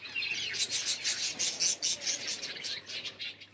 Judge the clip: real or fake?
real